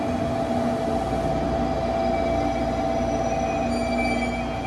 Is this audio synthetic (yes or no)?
no